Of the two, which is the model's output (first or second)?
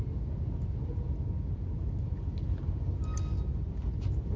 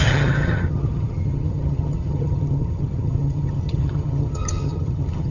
second